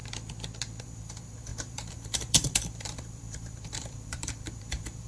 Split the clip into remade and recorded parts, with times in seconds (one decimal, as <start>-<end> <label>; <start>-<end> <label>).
0.0-0.8 recorded; 0.8-5.1 remade